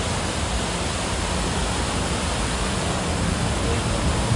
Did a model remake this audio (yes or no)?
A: no